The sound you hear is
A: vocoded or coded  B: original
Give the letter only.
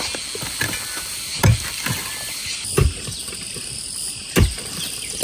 B